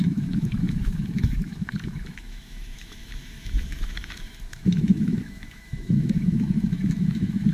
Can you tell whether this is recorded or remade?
remade